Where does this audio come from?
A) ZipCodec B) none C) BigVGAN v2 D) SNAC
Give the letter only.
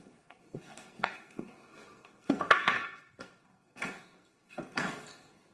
D